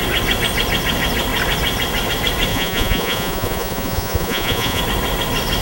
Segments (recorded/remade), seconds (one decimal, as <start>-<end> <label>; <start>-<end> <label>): 0.0-2.5 recorded; 2.5-4.8 remade; 4.8-5.6 recorded